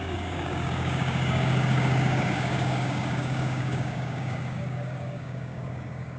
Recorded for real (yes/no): no